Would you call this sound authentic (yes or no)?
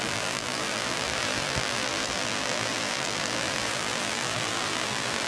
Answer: no